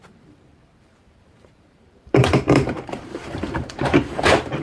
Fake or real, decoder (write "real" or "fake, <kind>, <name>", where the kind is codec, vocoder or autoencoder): fake, vocoder, BigVGAN v2